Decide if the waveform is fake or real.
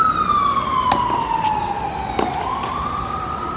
real